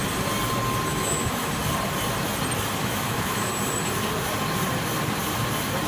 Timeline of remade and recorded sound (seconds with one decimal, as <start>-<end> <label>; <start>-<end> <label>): 0.0-0.9 recorded; 0.9-1.5 remade; 1.5-2.8 recorded; 2.8-3.5 remade; 3.5-5.9 recorded